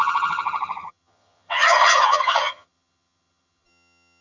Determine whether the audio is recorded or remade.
remade